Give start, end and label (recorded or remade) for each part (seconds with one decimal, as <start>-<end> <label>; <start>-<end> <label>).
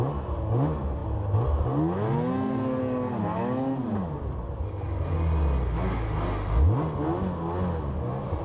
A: 0.0-8.4 recorded